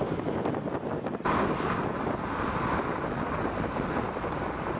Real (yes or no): yes